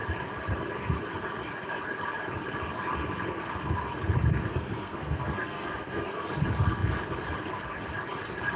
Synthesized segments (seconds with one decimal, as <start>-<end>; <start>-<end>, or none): 4.5-6.3